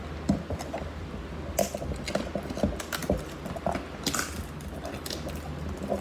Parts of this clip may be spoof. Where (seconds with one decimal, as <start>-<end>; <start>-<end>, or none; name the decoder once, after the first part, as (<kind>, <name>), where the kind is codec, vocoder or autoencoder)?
none